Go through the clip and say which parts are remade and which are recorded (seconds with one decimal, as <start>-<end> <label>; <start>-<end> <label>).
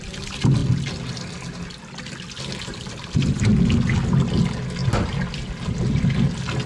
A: 0.0-6.7 recorded